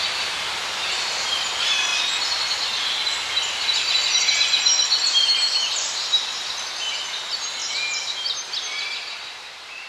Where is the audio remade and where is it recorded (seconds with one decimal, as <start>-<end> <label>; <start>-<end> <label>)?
0.0-1.9 remade; 1.9-3.3 recorded; 3.3-4.0 remade; 4.0-5.7 recorded; 5.7-9.9 remade